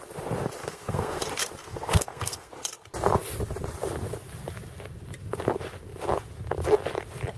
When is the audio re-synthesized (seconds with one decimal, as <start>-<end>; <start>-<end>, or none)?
0.6-1.2; 1.6-2.5